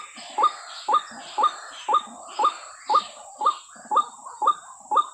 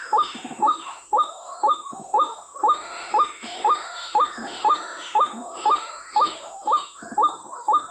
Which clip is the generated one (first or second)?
second